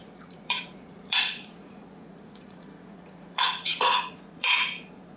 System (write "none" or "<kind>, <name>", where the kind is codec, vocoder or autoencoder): vocoder, Vocos